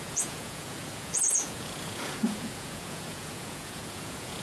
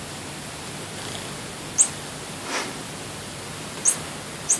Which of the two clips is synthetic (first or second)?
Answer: first